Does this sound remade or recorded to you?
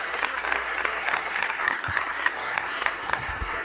remade